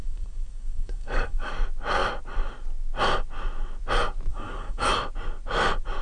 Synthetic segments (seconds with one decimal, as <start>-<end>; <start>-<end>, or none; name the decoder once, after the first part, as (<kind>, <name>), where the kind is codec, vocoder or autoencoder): 0.0-1.5 (codec, DAC); 4.3-4.9